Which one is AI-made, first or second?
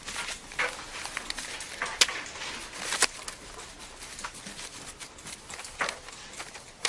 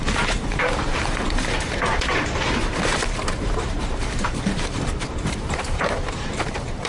second